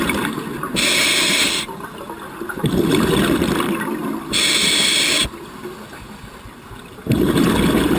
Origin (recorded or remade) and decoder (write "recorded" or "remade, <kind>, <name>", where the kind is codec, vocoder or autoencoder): recorded